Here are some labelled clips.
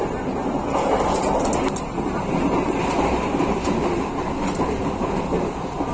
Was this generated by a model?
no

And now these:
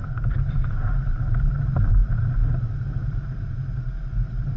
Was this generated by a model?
yes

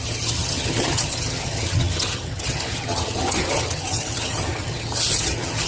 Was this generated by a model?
yes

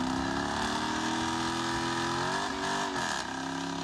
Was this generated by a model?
no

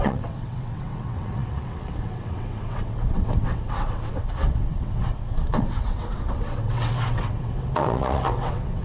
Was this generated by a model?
yes